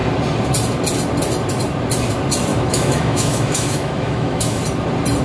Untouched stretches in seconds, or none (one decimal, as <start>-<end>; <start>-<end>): 0.0-2.5; 4.6-5.2